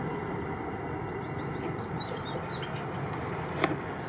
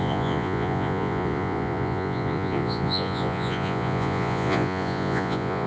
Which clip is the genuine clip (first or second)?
first